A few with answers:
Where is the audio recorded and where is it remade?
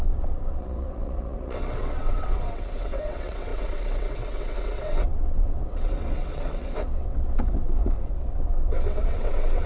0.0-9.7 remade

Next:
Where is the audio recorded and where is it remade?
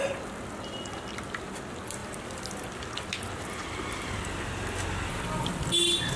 0.0-2.0 recorded; 2.0-5.7 remade; 5.7-6.2 recorded